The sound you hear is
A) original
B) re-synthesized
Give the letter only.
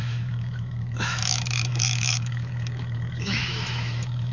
B